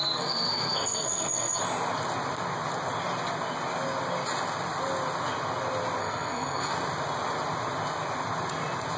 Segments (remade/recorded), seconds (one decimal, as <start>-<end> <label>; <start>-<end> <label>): 0.0-1.6 remade; 1.6-6.0 recorded; 6.0-6.7 remade; 6.7-9.0 recorded